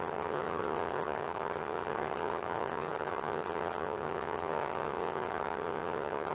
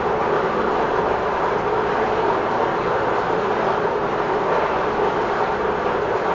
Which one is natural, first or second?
second